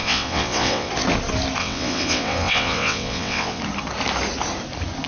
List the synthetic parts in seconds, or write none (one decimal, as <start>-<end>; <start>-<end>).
0.0-0.9; 1.6-3.6